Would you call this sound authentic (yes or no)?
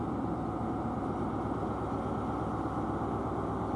yes